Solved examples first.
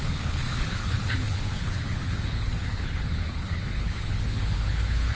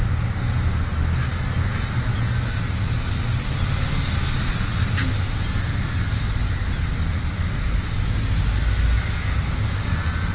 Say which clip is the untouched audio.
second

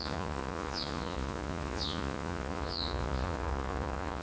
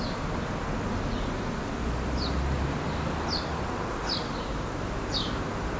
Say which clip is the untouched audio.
second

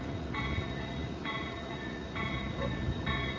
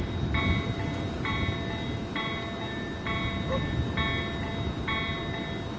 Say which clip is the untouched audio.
second